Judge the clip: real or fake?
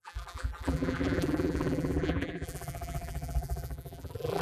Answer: fake